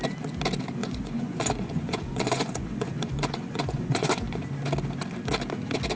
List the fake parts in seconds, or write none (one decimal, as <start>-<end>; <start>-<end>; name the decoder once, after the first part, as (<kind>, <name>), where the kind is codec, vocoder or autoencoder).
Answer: 0.8-4.4 (vocoder, Vocos)